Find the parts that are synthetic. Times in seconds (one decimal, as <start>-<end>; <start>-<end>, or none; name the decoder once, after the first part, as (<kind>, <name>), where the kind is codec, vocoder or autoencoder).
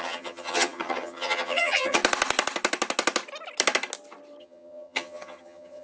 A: 0.0-2.0 (vocoder, HiFi-GAN); 4.4-5.8